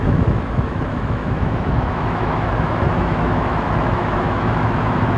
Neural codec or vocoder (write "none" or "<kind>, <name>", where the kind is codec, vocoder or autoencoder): autoencoder, DAC-VAE